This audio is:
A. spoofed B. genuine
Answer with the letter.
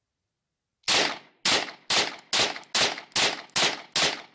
B